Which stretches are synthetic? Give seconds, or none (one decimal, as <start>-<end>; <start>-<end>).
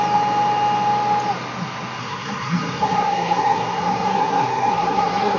2.0-5.4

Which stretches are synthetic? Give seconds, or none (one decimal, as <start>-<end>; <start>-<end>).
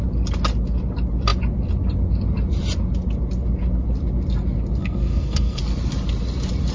4.8-5.6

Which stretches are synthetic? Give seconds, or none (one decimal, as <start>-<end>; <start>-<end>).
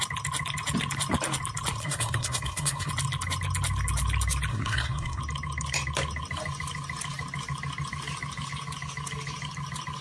1.8-2.9; 4.5-5.2